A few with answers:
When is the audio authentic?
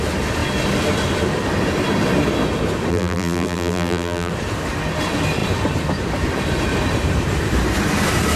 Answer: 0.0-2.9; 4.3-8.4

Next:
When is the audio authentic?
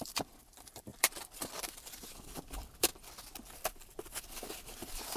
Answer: 2.9-3.7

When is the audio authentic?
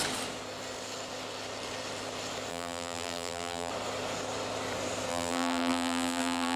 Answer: 0.0-2.5; 3.7-5.1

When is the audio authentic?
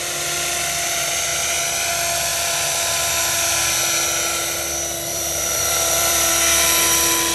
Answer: 0.0-2.3; 3.1-5.1; 6.3-7.3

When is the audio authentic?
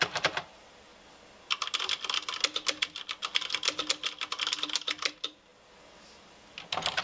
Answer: 0.9-5.1; 5.5-7.0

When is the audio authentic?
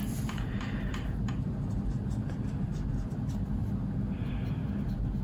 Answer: 0.6-5.2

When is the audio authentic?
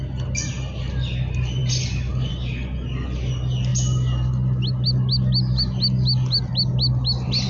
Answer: 0.0-7.5